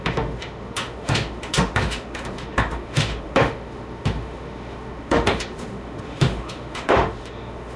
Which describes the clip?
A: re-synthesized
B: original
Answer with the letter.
A